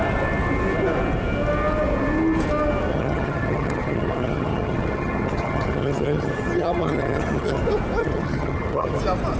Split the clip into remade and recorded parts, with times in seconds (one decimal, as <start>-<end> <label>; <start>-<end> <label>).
0.0-2.9 recorded; 2.9-7.6 remade; 7.6-8.0 recorded; 8.0-9.0 remade; 9.0-9.4 recorded